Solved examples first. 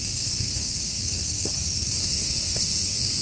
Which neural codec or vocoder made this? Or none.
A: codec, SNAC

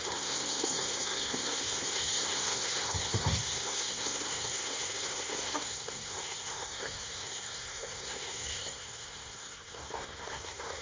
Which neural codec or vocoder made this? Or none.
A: codec, SNAC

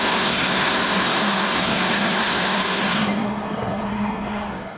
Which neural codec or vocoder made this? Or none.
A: codec, SNAC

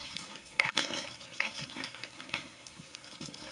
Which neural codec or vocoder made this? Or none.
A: codec, SNAC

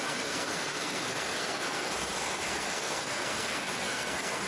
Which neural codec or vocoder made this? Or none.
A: codec, SNAC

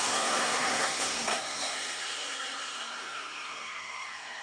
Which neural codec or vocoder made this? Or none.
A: codec, SNAC